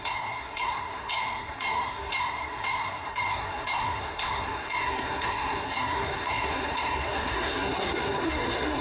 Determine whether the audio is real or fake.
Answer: fake